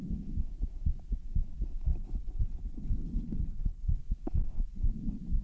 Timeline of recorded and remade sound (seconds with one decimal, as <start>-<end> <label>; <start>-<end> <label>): 0.0-1.9 recorded; 1.9-4.0 remade; 4.0-5.4 recorded